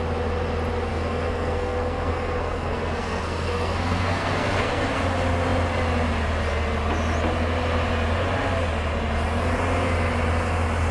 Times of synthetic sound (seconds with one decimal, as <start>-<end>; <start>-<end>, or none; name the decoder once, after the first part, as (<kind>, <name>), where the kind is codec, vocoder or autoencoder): 0.9-5.0 (codec, SNAC)